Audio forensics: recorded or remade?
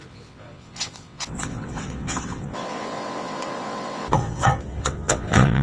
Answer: remade